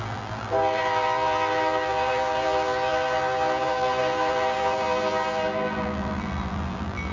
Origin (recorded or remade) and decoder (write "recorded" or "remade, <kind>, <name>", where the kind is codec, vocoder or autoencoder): remade, vocoder, BigVGAN v2